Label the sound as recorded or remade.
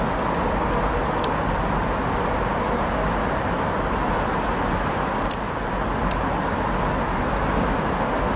recorded